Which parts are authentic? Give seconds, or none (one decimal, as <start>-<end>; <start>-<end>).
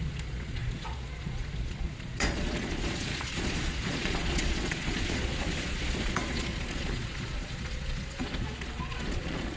none